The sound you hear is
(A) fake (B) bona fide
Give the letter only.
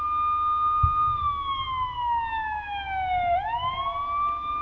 B